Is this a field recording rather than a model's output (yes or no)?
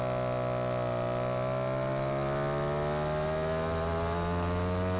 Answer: yes